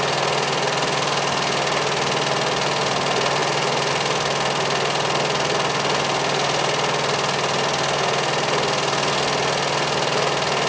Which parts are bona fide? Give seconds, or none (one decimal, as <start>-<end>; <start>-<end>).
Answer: 0.0-10.7